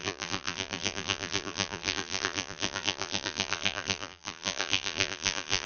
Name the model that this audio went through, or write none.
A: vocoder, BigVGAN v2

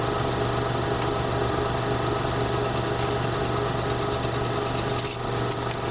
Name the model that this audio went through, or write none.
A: none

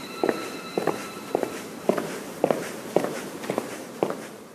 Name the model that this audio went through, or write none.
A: vocoder, BigVGAN v2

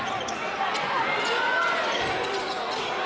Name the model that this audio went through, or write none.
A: none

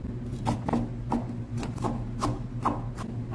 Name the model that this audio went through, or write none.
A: none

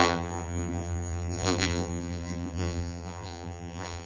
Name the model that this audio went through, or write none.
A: vocoder, BigVGAN v2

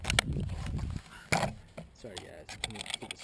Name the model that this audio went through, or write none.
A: none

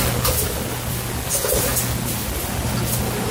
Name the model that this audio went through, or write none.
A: none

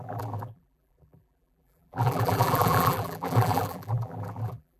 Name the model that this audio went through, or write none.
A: vocoder, BigVGAN v2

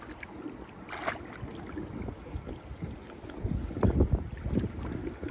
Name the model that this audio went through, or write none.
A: none